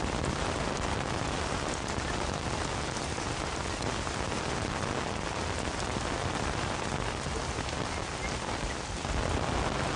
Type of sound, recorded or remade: recorded